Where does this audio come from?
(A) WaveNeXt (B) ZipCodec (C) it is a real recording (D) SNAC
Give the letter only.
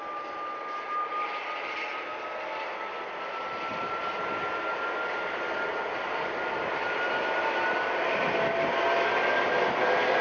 C